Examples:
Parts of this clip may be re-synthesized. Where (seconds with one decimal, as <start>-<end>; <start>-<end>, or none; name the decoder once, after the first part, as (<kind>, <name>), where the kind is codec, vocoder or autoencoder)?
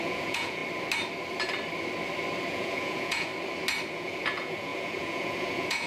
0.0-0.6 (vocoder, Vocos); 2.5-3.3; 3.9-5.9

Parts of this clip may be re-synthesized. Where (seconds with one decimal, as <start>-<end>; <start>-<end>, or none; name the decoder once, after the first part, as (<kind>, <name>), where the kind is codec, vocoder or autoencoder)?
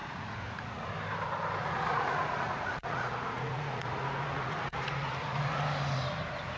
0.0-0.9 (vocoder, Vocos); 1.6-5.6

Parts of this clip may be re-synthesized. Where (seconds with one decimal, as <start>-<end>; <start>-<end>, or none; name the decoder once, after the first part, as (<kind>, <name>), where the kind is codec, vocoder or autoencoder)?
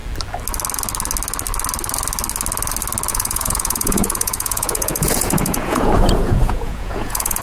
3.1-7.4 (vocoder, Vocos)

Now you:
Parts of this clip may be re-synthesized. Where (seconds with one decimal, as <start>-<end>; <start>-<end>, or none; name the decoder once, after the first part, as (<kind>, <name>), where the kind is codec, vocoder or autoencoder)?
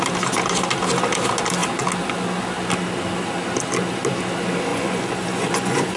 4.7-6.0 (vocoder, Vocos)